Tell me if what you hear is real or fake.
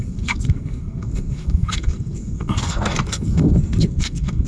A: fake